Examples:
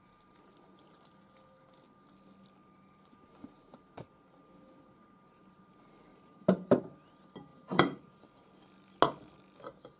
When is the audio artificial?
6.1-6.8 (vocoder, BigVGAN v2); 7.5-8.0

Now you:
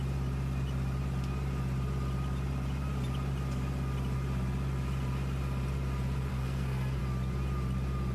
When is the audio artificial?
6.3-7.0 (codec, SNAC)

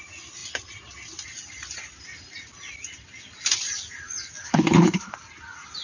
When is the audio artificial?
4.4-5.1 (codec, HILCodec)

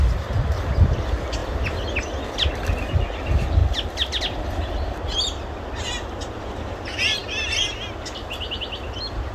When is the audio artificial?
none

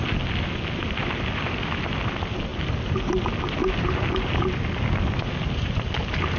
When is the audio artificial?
none

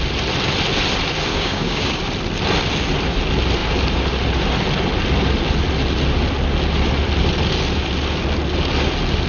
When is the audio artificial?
1.3-2.0 (codec, DAC)